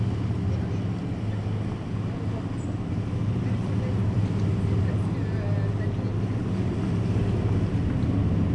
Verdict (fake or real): real